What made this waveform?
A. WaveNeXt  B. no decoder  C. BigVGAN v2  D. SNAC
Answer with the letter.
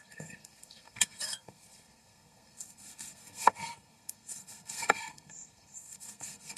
D